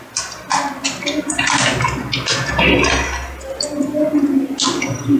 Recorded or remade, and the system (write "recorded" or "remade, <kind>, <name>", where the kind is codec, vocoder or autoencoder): recorded